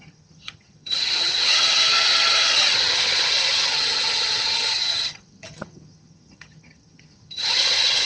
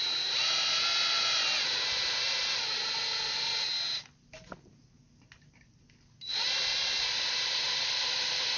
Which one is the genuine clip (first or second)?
second